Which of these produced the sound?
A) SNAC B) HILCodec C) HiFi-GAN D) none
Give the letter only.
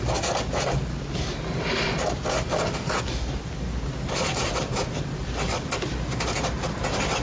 D